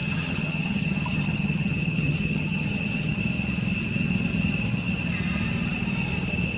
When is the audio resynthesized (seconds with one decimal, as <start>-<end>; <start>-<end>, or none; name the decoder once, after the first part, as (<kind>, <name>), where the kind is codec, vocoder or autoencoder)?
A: 0.0-3.2 (vocoder, HiFi-GAN)